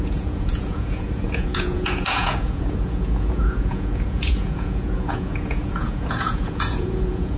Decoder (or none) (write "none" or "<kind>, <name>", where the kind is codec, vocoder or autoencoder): vocoder, Vocos